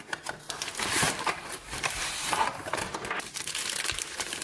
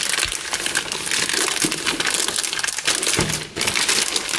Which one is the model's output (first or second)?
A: first